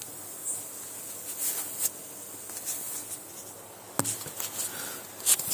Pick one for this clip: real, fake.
real